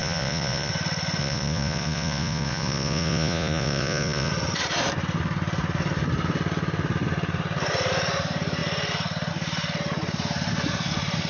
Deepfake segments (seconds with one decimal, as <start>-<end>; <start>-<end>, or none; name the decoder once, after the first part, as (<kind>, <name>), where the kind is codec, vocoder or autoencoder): 0.0-0.7 (vocoder, Vocos); 1.2-4.3